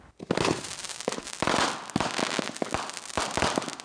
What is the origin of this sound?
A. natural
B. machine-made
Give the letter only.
A